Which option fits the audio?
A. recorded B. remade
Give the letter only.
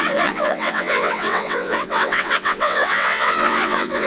B